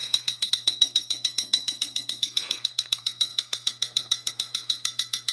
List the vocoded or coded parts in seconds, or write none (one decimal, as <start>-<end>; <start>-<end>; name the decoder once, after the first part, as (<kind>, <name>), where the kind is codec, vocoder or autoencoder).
0.0-5.3 (codec, SNAC)